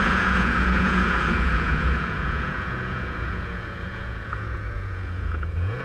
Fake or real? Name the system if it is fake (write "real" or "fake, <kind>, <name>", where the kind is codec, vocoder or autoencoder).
fake, vocoder, Vocos